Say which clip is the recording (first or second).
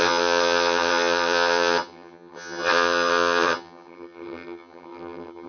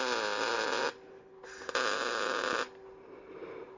second